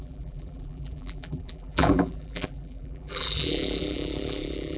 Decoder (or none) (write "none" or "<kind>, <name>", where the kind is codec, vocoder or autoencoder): vocoder, BigVGAN v2